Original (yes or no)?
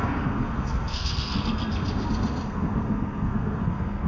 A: no